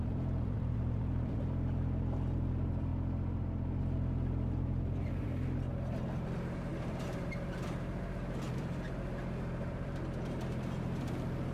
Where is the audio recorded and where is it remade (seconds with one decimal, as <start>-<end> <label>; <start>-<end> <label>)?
0.0-2.9 remade; 2.9-3.8 recorded; 3.8-11.5 remade